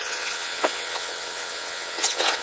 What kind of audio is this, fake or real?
fake